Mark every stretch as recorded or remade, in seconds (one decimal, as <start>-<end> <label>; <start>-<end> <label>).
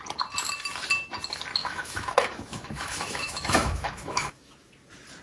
0.0-1.6 recorded; 1.6-4.7 remade; 4.7-5.2 recorded